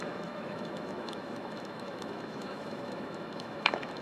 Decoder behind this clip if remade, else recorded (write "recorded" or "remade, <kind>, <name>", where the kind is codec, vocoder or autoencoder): remade, autoencoder, DAC-VAE